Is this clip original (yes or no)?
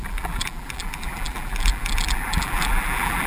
no